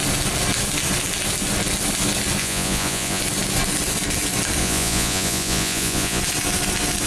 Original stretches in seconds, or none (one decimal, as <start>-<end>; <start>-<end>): 0.0-2.4; 3.2-4.6; 6.2-7.1